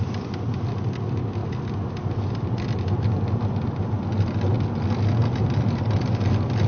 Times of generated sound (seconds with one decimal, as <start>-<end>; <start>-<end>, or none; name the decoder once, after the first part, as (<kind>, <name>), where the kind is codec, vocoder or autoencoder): none